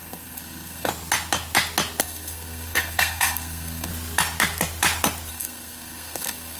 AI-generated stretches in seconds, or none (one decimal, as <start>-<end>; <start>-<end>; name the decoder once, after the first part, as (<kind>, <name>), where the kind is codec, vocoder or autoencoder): 0.0-0.9 (codec, SNAC); 2.0-3.9; 5.3-6.6